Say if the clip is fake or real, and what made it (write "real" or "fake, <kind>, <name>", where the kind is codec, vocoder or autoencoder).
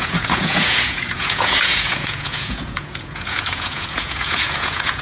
fake, vocoder, Vocos